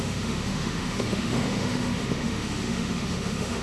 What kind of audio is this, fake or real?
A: fake